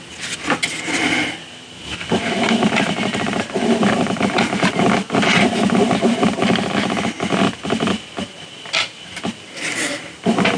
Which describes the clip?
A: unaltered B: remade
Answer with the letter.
A